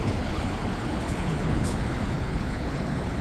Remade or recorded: remade